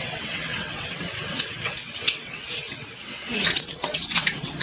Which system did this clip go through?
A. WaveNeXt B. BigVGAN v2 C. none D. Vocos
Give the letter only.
A